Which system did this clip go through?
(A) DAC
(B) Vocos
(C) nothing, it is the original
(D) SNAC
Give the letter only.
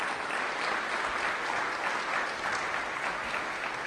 C